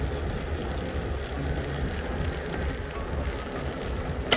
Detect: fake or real real